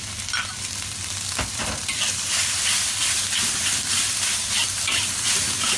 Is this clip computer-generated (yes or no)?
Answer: yes